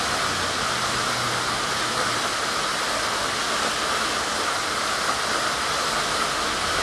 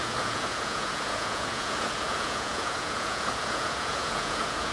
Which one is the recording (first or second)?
first